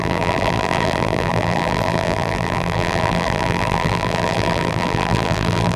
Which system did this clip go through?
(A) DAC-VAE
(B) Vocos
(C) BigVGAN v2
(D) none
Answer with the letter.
C